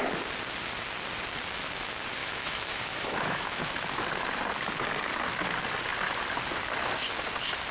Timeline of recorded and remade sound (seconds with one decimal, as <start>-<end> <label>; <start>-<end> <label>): 0.0-2.2 recorded; 2.2-3.7 remade; 3.7-7.7 recorded